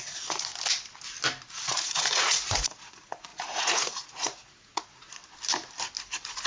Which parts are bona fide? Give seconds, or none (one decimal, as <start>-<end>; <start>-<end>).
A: 0.5-1.5; 5.2-6.0